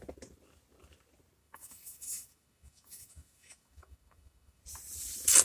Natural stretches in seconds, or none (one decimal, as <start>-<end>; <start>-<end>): 0.0-1.4; 4.6-5.4